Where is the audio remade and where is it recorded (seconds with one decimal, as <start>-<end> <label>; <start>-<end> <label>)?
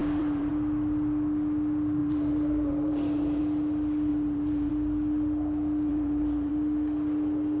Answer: 0.0-0.5 remade; 0.5-2.0 recorded; 2.0-3.4 remade; 3.4-4.1 recorded; 4.1-4.7 remade; 4.7-5.9 recorded; 5.9-6.5 remade; 6.5-7.6 recorded